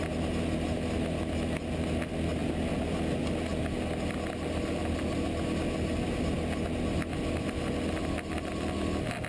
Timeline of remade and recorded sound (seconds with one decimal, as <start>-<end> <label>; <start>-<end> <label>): 0.0-9.3 recorded